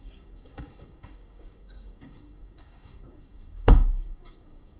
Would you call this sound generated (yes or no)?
yes